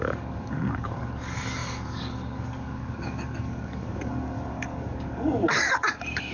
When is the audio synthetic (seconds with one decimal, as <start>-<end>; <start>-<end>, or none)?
0.0-6.3